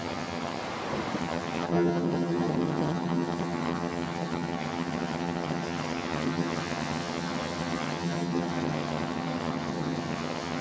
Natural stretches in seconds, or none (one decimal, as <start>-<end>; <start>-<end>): 0.6-1.2